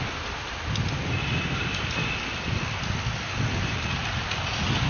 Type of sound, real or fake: real